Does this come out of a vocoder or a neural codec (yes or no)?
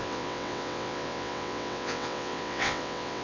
yes